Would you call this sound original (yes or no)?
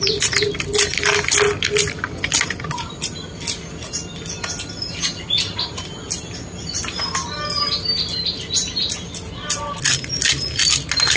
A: yes